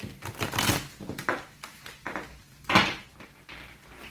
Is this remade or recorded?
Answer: recorded